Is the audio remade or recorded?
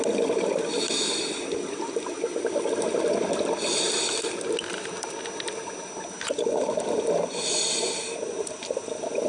recorded